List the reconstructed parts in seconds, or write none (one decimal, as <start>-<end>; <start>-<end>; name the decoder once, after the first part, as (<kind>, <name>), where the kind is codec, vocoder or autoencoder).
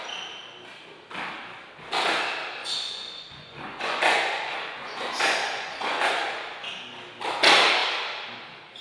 2.6-6.7 (vocoder, Vocos)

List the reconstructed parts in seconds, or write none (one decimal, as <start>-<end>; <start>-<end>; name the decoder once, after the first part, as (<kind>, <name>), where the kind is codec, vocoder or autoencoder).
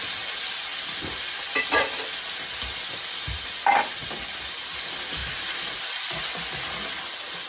5.2-6.2 (vocoder, BigVGAN v2)